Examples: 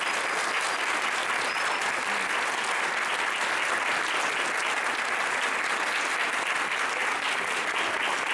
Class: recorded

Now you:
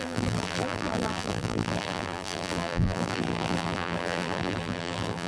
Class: remade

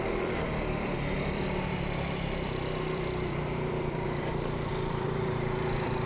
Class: remade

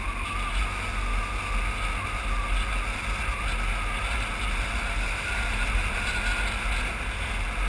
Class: recorded